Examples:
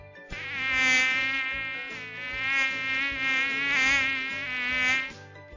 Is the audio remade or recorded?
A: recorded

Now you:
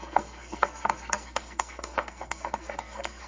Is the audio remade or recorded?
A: remade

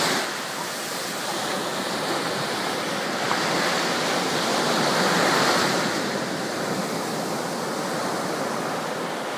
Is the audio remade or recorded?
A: recorded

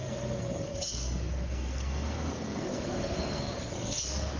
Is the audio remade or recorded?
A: remade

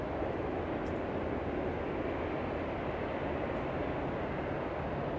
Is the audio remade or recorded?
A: recorded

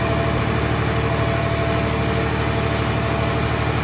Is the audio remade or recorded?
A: recorded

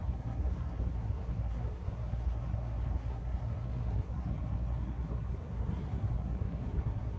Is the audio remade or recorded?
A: remade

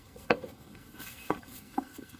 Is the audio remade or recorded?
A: remade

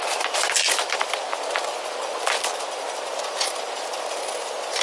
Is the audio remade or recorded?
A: recorded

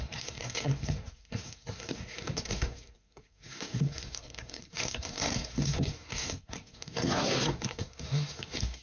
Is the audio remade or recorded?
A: remade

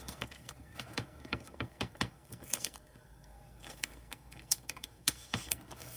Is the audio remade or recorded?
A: remade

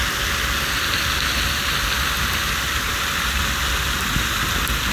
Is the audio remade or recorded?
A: recorded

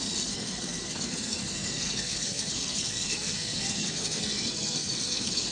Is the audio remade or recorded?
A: remade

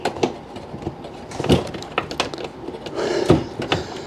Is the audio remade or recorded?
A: recorded